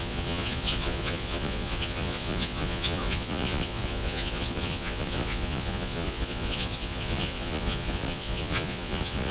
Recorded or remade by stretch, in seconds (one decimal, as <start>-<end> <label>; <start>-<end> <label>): 0.0-9.3 remade